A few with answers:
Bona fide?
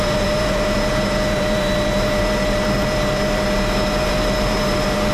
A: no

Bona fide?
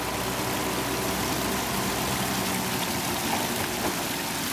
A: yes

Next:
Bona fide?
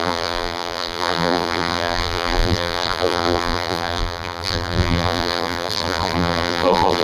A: no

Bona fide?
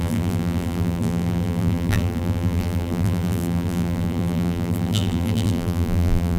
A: no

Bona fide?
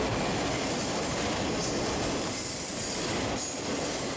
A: no